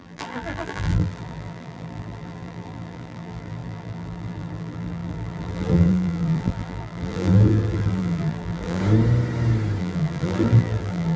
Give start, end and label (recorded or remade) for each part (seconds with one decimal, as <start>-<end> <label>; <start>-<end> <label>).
0.0-8.8 remade; 8.8-9.8 recorded; 9.8-11.2 remade